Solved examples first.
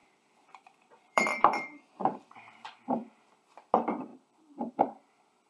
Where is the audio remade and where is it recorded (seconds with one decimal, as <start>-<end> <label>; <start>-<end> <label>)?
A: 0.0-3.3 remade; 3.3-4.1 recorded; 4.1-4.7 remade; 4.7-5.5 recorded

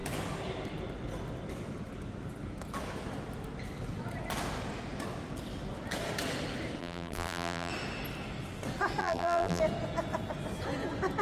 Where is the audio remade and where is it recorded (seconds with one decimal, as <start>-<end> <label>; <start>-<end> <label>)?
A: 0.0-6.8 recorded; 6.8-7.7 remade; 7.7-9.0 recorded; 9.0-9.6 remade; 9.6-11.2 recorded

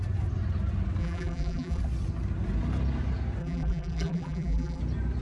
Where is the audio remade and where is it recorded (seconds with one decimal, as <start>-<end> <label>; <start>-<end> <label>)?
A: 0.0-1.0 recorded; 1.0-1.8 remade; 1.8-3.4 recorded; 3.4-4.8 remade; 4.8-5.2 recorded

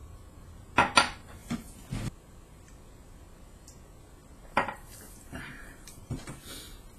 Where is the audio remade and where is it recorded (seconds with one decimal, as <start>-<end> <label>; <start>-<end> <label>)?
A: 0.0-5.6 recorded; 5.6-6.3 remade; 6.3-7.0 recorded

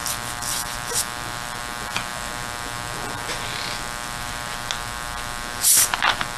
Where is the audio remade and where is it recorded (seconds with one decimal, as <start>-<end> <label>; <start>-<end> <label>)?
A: 0.0-6.4 recorded

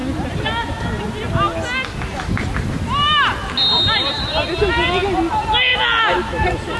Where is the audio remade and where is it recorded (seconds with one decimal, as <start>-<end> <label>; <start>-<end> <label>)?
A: 0.0-6.8 recorded

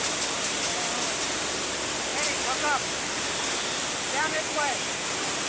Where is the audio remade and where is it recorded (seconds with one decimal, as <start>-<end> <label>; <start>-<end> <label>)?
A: 0.0-2.1 remade; 2.1-4.4 recorded; 4.4-5.5 remade

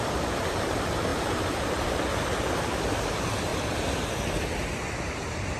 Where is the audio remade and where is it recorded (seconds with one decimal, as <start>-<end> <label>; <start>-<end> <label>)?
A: 0.0-3.5 remade; 3.5-5.6 recorded